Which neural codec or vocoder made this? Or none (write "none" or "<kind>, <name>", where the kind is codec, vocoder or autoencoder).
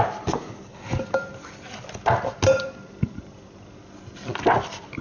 none